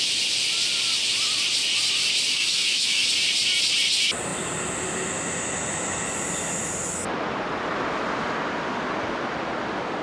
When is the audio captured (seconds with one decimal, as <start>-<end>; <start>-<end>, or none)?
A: 0.0-2.3; 3.1-10.0